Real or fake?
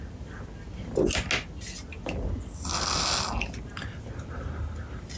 real